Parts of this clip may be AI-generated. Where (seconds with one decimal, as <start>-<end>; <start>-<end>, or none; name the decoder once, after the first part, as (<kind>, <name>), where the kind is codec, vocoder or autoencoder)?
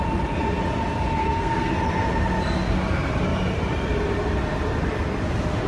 1.2-1.7 (codec, SNAC)